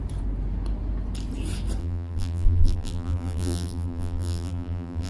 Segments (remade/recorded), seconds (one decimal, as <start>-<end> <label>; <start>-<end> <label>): 0.0-1.8 recorded; 1.8-5.1 remade